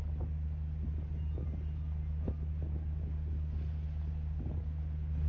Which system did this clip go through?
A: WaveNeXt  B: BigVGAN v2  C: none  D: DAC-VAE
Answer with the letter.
C